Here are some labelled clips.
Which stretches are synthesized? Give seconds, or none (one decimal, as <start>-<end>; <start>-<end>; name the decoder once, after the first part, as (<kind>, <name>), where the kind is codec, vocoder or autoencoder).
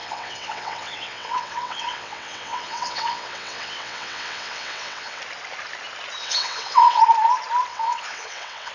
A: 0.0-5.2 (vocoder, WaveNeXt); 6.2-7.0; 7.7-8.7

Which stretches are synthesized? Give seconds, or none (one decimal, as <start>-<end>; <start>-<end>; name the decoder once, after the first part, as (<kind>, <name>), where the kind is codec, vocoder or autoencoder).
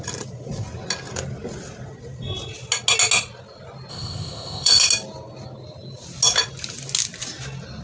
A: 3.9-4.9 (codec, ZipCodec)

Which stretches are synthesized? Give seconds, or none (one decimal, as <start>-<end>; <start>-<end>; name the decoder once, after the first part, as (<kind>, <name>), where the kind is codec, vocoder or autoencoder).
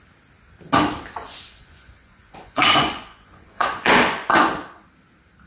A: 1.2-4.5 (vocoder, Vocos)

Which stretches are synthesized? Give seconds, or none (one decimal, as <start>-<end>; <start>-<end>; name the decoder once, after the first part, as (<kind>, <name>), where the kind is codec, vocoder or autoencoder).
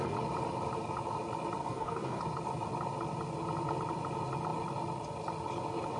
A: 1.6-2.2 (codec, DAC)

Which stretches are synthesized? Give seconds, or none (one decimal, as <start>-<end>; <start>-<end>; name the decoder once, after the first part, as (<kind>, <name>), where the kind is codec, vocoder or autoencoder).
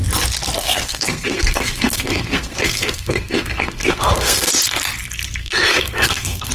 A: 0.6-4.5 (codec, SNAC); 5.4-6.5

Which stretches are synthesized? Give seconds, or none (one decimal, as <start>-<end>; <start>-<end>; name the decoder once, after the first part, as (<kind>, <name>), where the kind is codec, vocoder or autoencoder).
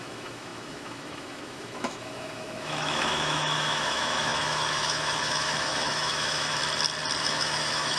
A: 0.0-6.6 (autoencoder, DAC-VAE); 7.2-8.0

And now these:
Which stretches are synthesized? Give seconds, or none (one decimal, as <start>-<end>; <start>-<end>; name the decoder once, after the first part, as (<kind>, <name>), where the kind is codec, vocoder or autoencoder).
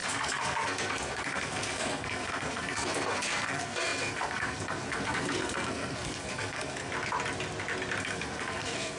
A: 0.0-6.9 (codec, SNAC); 8.0-9.0